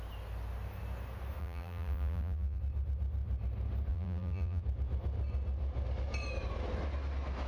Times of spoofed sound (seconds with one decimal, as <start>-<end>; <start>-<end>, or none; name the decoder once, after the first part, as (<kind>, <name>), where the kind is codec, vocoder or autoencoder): 1.4-2.6 (vocoder, BigVGAN v2); 3.9-4.6